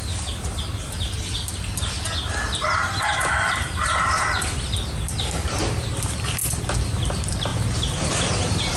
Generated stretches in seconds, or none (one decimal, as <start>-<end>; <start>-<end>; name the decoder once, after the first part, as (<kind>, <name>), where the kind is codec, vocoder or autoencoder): 2.8-4.5 (vocoder, BigVGAN v2)

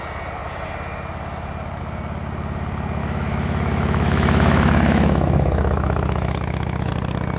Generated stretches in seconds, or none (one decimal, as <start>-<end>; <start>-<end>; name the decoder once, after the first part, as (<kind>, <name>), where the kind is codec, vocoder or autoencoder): 3.0-6.9 (autoencoder, DAC-VAE)

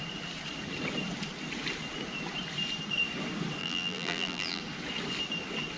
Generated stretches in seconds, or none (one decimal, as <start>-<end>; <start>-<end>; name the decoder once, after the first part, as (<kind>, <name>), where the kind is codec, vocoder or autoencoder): 3.6-4.6 (vocoder, BigVGAN v2)

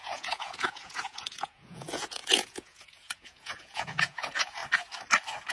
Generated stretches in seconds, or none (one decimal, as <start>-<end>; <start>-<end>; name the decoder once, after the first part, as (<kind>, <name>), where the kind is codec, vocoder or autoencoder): 0.0-4.6 (vocoder, Vocos)